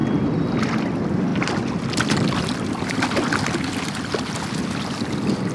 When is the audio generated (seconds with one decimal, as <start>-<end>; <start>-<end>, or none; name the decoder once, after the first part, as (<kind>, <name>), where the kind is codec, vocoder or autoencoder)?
none

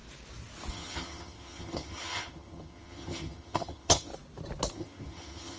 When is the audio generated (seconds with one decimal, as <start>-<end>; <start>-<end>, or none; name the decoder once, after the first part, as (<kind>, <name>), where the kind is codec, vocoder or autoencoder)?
0.7-4.1 (vocoder, HiFi-GAN); 4.7-5.6

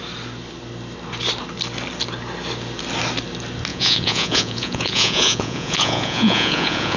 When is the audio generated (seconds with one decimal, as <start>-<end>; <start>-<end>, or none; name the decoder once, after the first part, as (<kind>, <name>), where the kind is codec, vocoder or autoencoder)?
3.7-7.0 (vocoder, Vocos)

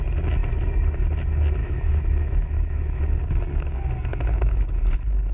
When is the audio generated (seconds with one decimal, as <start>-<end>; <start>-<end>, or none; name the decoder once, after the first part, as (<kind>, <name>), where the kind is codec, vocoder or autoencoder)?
1.6-3.0 (autoencoder, DAC-VAE); 4.1-4.7

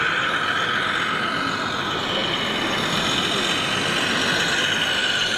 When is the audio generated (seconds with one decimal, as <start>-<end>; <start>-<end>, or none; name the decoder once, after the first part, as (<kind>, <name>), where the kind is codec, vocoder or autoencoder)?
none